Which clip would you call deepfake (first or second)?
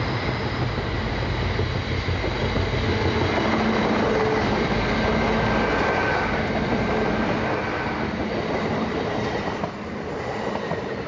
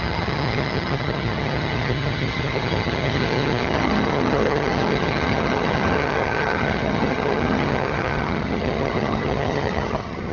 second